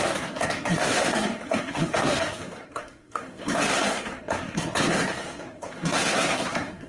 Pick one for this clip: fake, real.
fake